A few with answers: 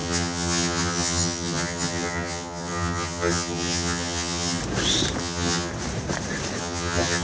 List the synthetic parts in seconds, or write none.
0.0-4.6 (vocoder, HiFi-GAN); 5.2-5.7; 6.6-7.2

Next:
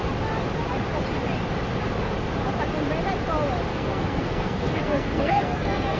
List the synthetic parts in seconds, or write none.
3.7-6.0 (codec, SNAC)

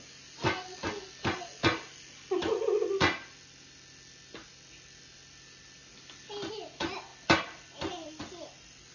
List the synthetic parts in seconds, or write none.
none

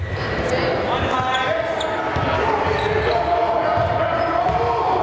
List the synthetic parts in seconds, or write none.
none

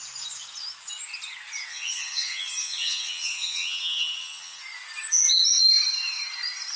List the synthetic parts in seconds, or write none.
1.7-4.6 (vocoder, HiFi-GAN)

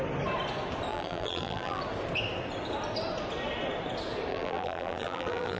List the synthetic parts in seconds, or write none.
0.9-1.8 (vocoder, BigVGAN v2); 4.3-5.6

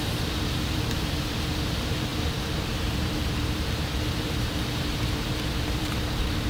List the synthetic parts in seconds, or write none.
0.0-6.5 (vocoder, BigVGAN v2)

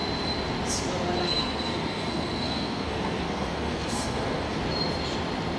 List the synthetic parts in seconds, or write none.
1.2-4.6 (codec, SNAC)